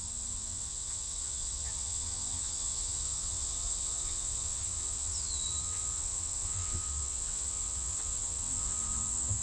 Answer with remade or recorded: remade